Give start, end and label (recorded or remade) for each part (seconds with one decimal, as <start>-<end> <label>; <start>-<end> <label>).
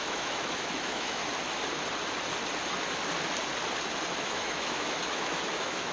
0.0-1.2 remade; 1.2-4.2 recorded; 4.2-5.9 remade